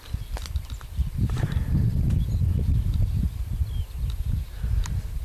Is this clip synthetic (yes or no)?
no